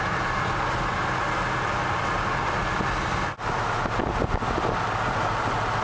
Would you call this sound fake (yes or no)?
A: no